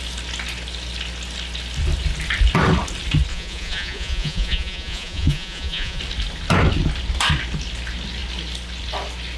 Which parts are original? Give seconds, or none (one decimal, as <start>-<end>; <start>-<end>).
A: 0.0-3.3; 6.0-9.4